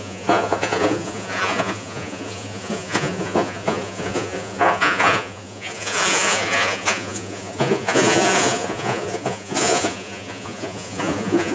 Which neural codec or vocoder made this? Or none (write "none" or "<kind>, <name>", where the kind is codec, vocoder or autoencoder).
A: vocoder, Vocos